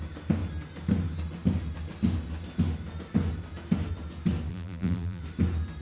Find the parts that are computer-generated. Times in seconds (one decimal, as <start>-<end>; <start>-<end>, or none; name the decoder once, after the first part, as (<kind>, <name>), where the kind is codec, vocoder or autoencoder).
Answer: 4.5-5.2 (vocoder, BigVGAN v2)